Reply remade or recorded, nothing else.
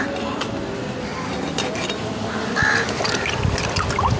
recorded